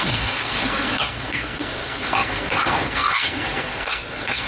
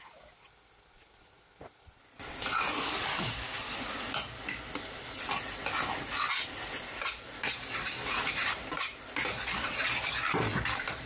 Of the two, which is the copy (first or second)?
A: first